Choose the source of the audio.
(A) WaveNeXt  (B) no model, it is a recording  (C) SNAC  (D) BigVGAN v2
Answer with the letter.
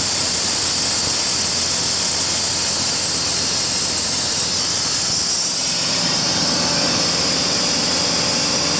B